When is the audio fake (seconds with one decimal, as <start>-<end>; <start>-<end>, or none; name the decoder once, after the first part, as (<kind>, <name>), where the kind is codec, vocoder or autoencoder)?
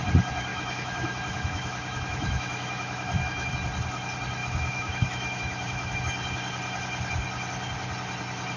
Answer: 0.5-3.5 (autoencoder, DAC-VAE); 4.4-6.0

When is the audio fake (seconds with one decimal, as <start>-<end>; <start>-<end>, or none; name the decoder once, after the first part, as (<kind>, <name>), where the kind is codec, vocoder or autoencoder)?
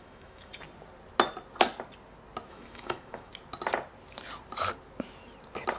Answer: 0.0-0.5 (autoencoder, DAC-VAE); 2.5-3.3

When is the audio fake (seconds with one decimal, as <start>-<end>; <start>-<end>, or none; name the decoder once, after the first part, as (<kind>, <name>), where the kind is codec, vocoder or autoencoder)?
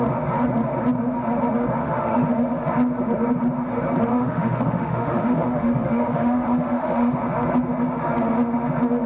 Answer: 1.8-2.3 (autoencoder, DAC-VAE); 4.1-7.2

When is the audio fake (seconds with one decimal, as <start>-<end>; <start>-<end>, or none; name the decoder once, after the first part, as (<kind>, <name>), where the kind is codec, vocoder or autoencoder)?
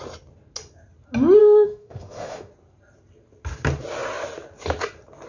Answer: 1.4-2.5 (autoencoder, DAC-VAE)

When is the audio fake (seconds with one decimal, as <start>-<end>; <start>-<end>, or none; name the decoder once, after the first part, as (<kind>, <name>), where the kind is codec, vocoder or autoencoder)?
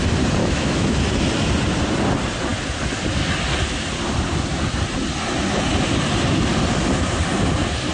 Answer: 0.4-1.0 (autoencoder, DAC-VAE)